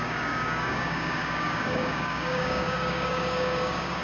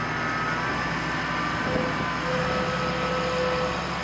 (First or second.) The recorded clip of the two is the second